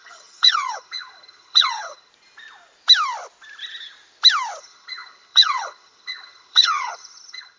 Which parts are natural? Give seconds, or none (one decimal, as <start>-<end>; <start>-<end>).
2.1-4.6